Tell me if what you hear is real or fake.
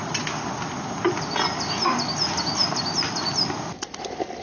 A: real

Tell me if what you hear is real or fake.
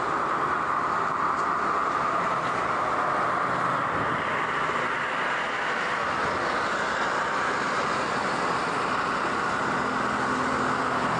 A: real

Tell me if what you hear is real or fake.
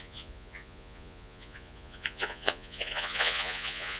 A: fake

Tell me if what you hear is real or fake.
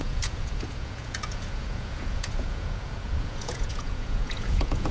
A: fake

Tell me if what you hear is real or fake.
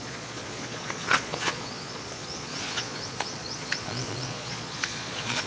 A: fake